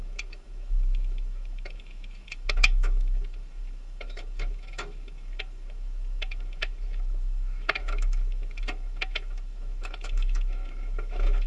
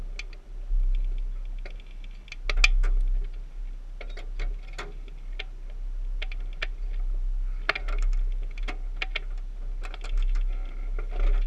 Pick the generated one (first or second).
first